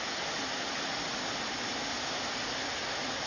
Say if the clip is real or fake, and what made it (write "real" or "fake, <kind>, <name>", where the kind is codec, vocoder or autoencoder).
real